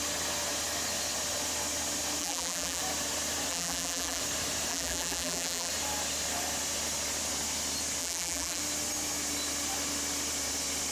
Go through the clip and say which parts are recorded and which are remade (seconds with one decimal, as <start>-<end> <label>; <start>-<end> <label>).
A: 0.0-2.2 recorded; 2.2-2.8 remade; 2.8-3.5 recorded; 3.5-4.2 remade; 4.2-4.7 recorded; 4.7-5.7 remade; 5.7-8.0 recorded; 8.0-8.6 remade; 8.6-10.9 recorded